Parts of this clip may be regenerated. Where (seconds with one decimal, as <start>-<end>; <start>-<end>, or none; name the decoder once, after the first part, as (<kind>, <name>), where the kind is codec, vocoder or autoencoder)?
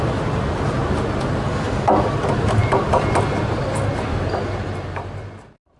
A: none